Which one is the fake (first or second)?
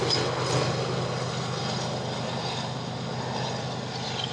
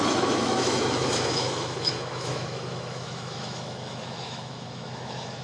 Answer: second